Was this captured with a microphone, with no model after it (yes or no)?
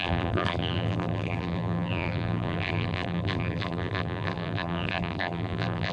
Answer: no